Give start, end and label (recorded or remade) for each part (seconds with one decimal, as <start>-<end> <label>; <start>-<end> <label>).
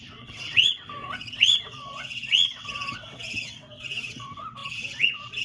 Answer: 0.0-5.4 remade